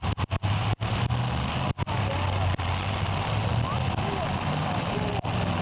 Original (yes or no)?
yes